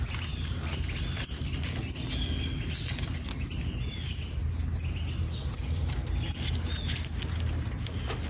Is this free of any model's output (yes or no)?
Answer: yes